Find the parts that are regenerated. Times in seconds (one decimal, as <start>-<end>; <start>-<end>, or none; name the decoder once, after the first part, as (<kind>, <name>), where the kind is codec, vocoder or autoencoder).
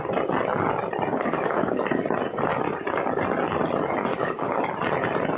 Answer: 1.1-1.8 (codec, DAC); 4.1-4.6